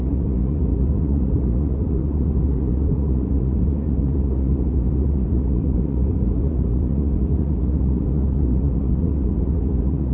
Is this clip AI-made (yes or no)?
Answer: yes